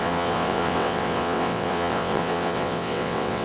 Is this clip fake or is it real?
fake